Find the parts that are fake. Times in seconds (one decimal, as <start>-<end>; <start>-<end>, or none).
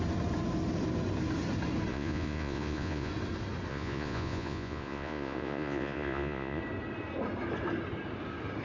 1.9-3.1; 3.7-6.6